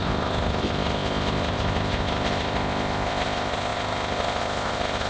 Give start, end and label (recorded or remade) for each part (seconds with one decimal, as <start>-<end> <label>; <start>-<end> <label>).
0.0-5.1 remade